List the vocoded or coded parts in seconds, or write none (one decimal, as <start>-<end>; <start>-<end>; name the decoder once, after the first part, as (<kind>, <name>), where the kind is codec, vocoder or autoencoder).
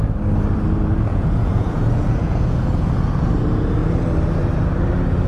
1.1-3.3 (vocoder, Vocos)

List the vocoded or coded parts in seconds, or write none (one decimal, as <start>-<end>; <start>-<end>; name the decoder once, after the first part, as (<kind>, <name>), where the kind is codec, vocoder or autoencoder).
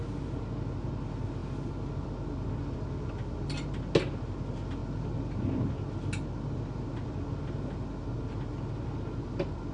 none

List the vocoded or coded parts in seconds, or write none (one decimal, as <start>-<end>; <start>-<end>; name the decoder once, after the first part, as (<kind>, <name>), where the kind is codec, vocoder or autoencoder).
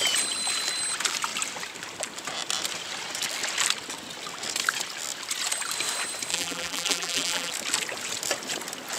6.3-7.5 (vocoder, BigVGAN v2)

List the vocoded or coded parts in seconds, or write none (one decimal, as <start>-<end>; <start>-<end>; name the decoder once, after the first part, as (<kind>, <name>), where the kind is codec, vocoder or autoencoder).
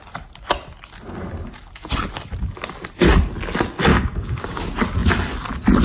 3.9-4.6 (codec, DAC)